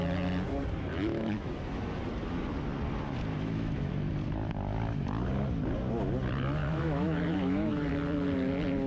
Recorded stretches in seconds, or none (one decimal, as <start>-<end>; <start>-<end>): 0.0-0.9; 1.5-3.3; 3.9-6.6; 7.9-8.9